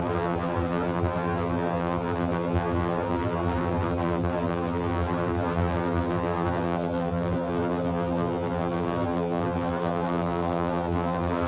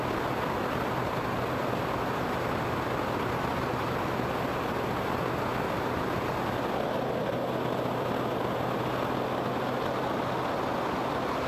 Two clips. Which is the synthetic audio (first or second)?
first